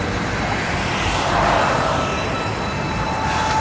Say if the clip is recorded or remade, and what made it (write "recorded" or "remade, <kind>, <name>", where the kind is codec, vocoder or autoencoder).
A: remade, vocoder, BigVGAN v2